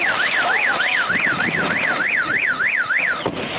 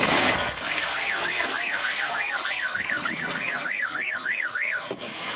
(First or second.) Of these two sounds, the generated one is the second